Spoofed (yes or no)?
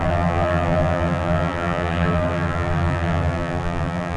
yes